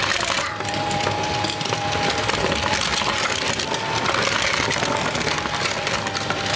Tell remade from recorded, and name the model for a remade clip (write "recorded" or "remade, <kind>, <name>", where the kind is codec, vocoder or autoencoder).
recorded